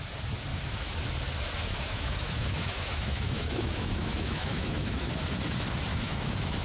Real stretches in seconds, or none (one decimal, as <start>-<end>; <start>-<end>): 0.0-0.5; 1.0-1.6; 5.1-5.9

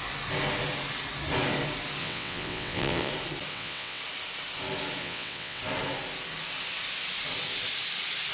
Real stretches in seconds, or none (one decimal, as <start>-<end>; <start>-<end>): 0.0-2.0; 3.1-3.5; 4.0-5.0; 5.6-8.3

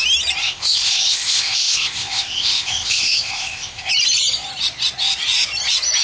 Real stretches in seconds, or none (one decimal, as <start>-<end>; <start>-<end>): 0.0-0.4; 3.9-6.0

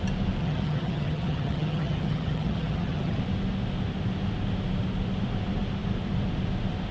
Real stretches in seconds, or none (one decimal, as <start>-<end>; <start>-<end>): 0.0-0.4; 3.2-6.9

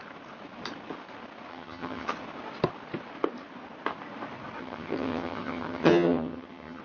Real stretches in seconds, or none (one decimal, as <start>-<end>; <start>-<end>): 0.0-1.5; 2.1-4.6

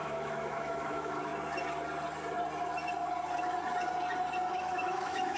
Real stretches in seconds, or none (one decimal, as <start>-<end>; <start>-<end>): 1.3-4.5

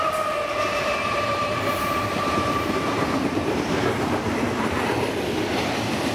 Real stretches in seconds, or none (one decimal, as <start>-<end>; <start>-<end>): 0.0-1.3; 4.9-6.1

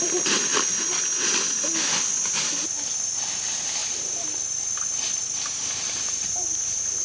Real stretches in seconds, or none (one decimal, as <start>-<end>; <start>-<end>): 0.0-7.0